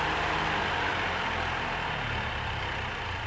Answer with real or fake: real